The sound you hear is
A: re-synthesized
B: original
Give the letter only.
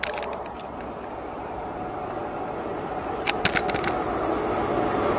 B